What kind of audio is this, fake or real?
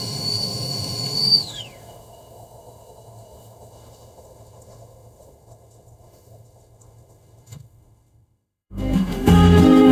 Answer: fake